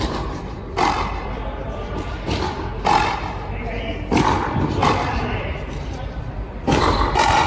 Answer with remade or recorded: remade